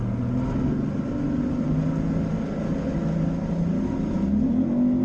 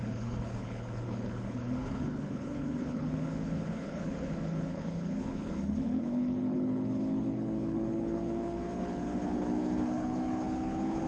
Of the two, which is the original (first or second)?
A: first